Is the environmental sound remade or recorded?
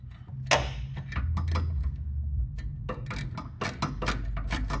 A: recorded